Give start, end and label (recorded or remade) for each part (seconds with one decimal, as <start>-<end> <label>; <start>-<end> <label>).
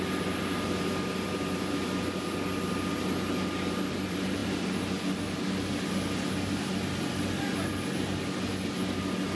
0.0-9.4 recorded